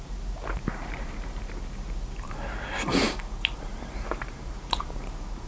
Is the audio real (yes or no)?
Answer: no